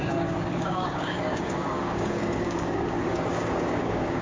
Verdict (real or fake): fake